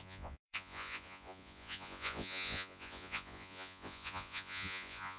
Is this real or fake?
fake